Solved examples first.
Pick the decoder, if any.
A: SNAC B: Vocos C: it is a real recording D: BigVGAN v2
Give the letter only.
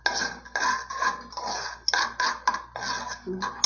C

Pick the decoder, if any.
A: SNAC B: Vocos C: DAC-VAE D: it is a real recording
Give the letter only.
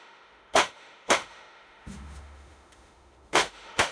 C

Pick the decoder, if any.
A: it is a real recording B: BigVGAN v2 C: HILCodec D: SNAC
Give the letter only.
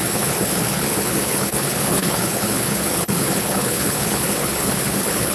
C